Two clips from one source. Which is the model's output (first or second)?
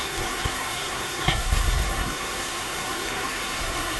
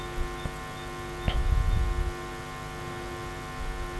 first